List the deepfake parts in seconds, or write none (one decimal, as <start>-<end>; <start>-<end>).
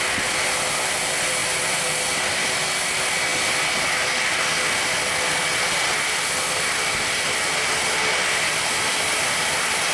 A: none